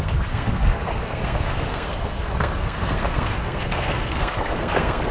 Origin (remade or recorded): remade